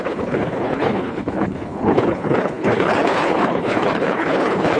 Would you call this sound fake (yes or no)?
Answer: yes